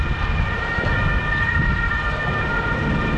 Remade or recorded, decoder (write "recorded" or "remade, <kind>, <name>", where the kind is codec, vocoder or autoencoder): recorded